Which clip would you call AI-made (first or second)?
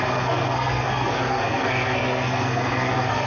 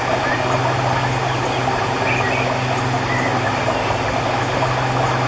first